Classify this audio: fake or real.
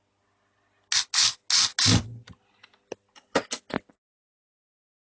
real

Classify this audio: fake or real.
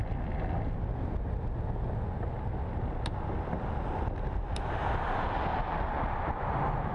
real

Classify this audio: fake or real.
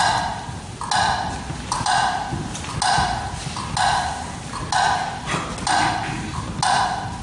real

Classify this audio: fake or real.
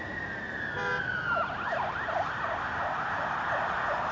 real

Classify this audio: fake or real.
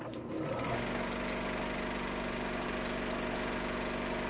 real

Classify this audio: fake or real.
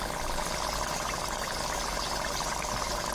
real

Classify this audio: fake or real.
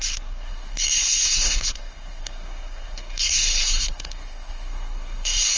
fake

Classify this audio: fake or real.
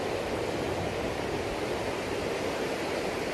real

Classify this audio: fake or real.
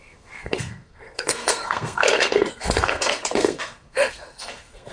fake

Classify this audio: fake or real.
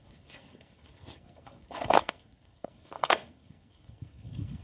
fake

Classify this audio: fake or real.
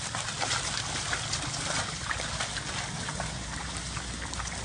real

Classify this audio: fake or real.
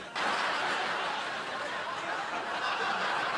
real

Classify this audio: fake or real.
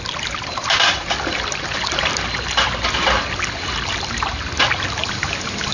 real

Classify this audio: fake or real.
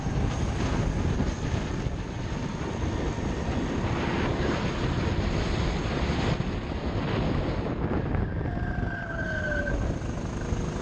real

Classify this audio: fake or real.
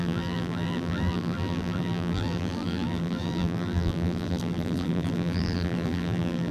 fake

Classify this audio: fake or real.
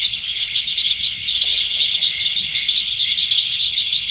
fake